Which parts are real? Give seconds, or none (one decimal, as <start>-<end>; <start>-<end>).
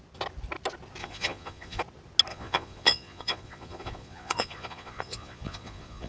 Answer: 0.0-1.0; 1.8-2.3